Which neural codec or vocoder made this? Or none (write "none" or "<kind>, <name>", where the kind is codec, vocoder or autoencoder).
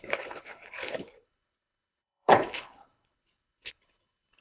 codec, HILCodec